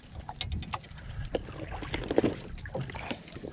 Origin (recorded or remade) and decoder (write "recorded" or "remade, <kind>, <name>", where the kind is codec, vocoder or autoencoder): recorded